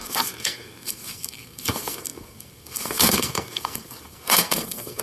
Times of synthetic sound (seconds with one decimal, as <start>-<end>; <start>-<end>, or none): 0.0-5.0